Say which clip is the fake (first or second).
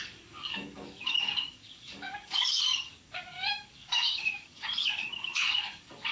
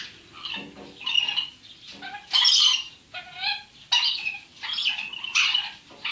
first